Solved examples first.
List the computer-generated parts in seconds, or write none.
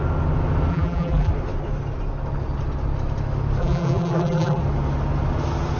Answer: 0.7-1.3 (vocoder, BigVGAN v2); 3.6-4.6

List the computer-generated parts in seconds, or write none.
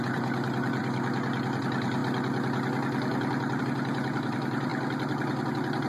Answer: 0.0-0.8 (vocoder, BigVGAN v2); 1.6-2.0; 3.6-4.7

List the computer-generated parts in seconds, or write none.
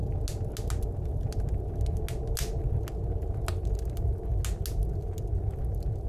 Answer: none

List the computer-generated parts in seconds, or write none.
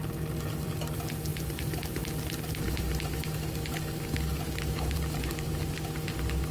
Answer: 1.3-2.9 (vocoder, BigVGAN v2); 4.3-5.8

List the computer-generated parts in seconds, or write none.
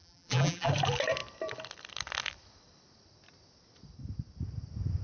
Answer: 0.0-0.7 (vocoder, BigVGAN v2)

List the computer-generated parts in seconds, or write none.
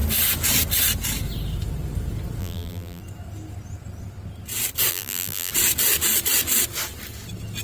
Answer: 2.4-3.0 (vocoder, BigVGAN v2); 4.9-5.5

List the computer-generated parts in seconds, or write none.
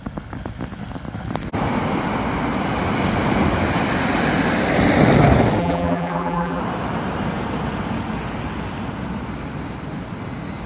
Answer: 5.6-6.6 (vocoder, BigVGAN v2)